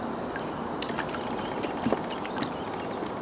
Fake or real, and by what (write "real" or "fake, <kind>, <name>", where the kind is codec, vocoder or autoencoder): real